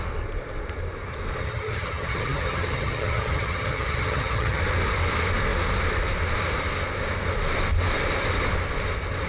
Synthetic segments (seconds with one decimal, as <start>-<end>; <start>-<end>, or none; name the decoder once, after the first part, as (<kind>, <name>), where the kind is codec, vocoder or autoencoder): 1.4-4.6 (vocoder, HiFi-GAN)